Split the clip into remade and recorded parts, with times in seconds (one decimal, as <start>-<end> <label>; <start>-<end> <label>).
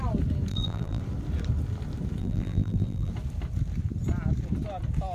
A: 0.0-0.5 recorded; 0.5-1.0 remade; 1.0-2.2 recorded; 2.2-3.1 remade; 3.1-5.1 recorded